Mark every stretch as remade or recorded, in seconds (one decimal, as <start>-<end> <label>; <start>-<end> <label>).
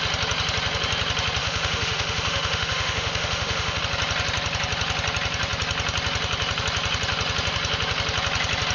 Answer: 0.0-1.4 recorded; 1.4-3.8 remade; 3.8-8.7 recorded